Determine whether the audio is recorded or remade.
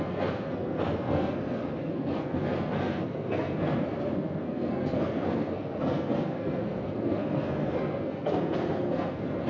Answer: remade